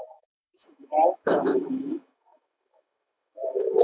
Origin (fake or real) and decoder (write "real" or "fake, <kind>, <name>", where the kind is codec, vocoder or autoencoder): fake, autoencoder, DAC-VAE